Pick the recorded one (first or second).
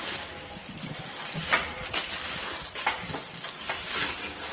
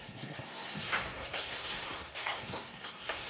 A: first